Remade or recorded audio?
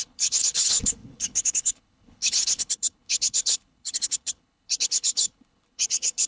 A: remade